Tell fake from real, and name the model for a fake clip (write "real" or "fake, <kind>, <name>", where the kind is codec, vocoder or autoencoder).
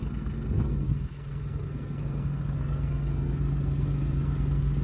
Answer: fake, codec, SNAC